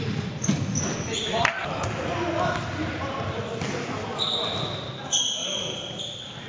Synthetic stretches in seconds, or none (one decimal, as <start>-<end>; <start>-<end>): none